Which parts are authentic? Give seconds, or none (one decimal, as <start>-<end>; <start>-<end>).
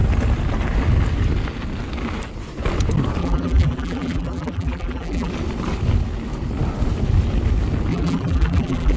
0.0-3.2; 5.3-7.9